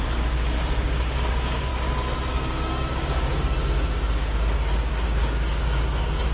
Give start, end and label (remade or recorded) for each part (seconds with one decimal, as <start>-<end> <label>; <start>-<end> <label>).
0.0-1.7 remade; 1.7-2.3 recorded; 2.3-6.3 remade